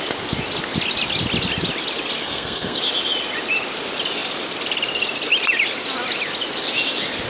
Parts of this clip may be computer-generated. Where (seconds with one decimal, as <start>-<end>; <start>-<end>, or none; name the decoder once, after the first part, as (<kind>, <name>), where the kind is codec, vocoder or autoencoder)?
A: 2.2-2.8 (codec, SNAC)